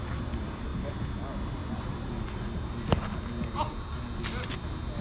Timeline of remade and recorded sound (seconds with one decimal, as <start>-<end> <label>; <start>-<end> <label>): 0.0-5.0 recorded